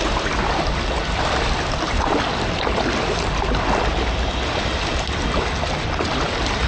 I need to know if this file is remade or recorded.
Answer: recorded